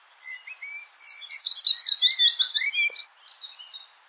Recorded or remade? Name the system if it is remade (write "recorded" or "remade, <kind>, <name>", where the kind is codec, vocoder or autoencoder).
recorded